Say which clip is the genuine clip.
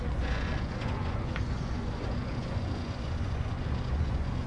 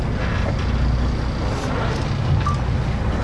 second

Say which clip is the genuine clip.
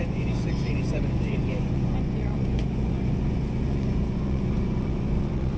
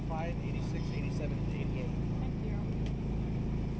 second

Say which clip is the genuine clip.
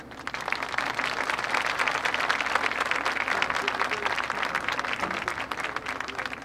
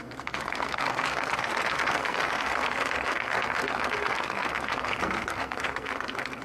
first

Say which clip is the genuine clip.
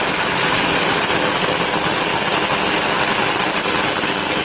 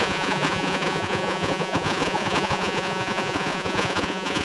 first